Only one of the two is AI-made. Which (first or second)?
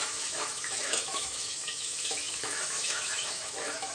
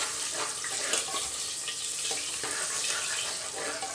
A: first